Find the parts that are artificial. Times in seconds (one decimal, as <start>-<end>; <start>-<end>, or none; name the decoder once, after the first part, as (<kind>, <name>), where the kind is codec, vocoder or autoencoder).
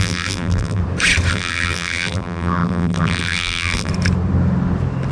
0.0-0.8 (vocoder, BigVGAN v2); 1.3-3.9